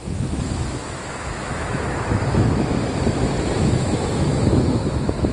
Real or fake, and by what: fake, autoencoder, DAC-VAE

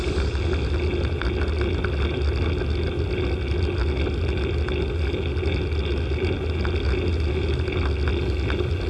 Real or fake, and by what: real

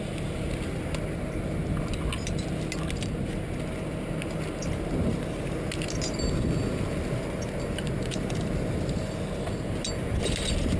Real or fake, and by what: real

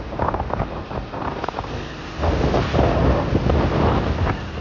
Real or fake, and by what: real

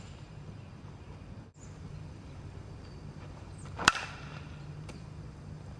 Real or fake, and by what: fake, vocoder, BigVGAN v2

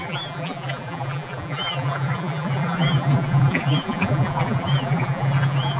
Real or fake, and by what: fake, vocoder, BigVGAN v2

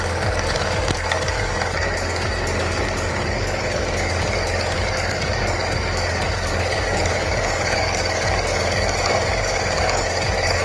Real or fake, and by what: fake, codec, DAC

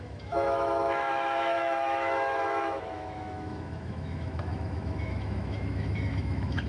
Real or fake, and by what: fake, autoencoder, DAC-VAE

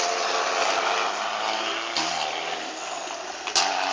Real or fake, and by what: real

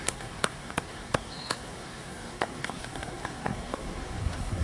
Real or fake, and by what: fake, codec, SNAC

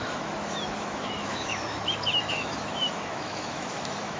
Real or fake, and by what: fake, autoencoder, DAC-VAE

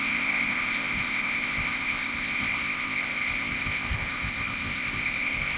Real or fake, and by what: fake, codec, ZipCodec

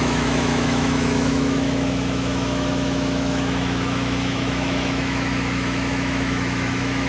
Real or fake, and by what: fake, autoencoder, DAC-VAE